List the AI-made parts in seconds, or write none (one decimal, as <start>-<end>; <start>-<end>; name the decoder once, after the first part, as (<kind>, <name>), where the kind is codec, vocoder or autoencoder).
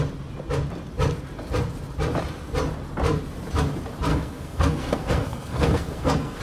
4.1-6.4 (codec, SNAC)